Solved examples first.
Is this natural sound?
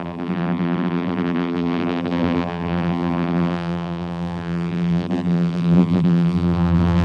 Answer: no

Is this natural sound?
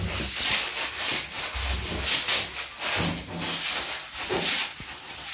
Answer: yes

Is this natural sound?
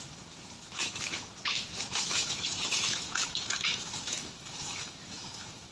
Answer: no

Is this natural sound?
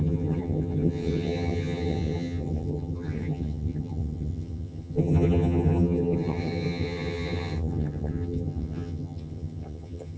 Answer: no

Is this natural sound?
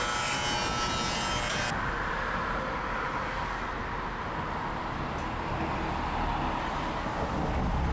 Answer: yes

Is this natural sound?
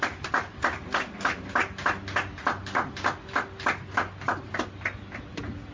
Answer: yes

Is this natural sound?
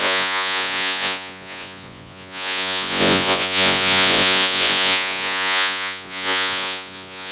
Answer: no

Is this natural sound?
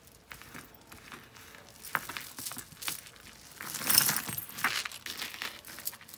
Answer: yes